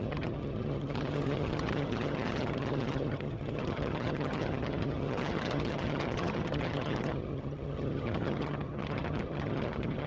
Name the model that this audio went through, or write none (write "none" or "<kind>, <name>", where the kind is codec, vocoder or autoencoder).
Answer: vocoder, HiFi-GAN